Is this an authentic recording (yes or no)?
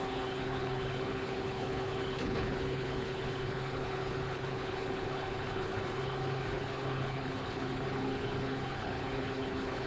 no